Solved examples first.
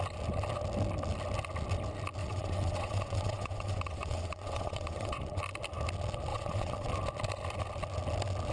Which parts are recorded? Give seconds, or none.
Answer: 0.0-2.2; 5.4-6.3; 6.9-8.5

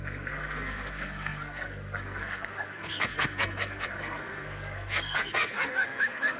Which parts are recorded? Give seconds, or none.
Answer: none

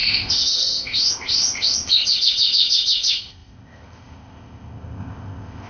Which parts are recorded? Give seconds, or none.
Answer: none

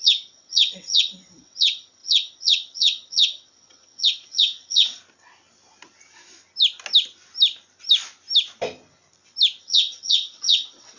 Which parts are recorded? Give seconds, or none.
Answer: 5.0-9.6

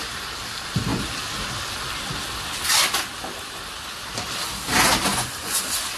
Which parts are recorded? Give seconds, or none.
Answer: 0.0-5.1; 5.6-6.0

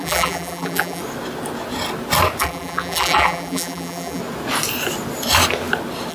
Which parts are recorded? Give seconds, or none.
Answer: 1.0-2.4; 4.2-6.1